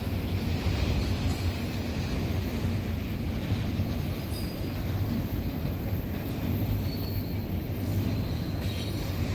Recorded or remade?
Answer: recorded